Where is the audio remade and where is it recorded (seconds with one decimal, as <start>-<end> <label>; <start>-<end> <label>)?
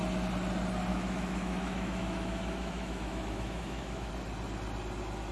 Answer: 0.0-0.9 recorded; 0.9-4.1 remade; 4.1-5.3 recorded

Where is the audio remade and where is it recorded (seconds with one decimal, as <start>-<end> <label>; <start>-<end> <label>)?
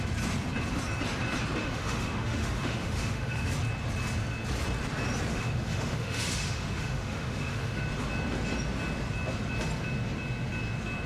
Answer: 0.0-1.6 recorded; 1.6-3.5 remade; 3.5-5.3 recorded; 5.3-7.8 remade; 7.8-11.1 recorded